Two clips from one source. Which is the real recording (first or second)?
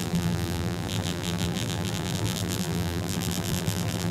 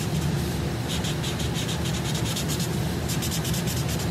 second